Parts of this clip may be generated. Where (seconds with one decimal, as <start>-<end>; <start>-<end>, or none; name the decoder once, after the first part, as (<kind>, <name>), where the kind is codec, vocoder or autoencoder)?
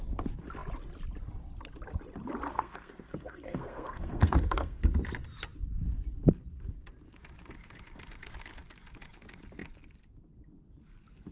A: 2.5-4.8 (codec, SNAC)